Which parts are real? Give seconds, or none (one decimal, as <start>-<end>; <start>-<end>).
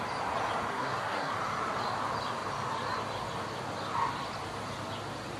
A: 0.0-0.7; 1.3-5.4